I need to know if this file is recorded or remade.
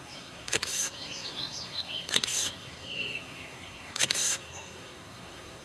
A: remade